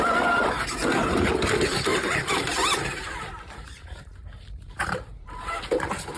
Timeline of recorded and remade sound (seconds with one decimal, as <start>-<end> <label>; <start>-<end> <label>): 0.0-1.9 recorded; 1.9-5.6 remade; 5.6-6.2 recorded